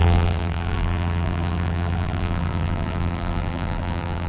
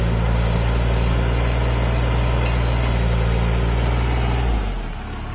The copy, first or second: first